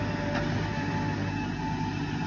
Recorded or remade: recorded